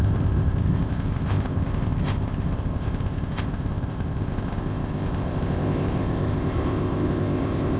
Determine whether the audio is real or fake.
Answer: fake